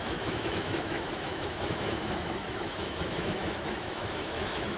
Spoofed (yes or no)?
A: yes